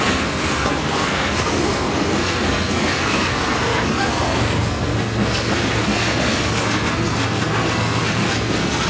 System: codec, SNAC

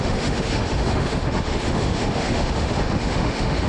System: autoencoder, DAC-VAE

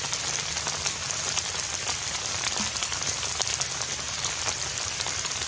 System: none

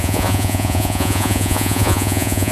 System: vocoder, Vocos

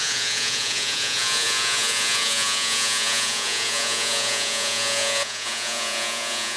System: vocoder, Vocos